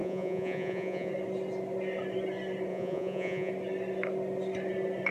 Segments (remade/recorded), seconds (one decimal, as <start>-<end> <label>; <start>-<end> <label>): 0.0-1.1 remade; 1.1-2.7 recorded; 2.7-3.5 remade; 3.5-5.1 recorded